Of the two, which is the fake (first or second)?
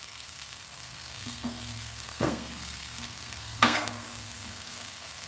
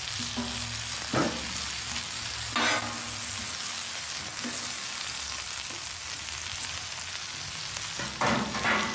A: first